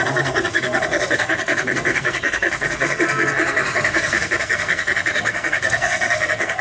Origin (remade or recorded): remade